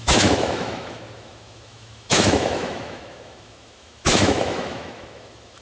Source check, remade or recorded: remade